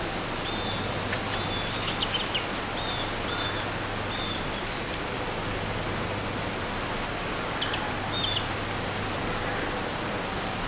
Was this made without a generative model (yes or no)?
yes